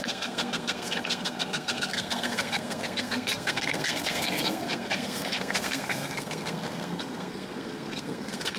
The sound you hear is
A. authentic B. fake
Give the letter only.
B